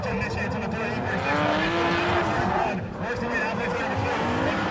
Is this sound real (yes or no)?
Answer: yes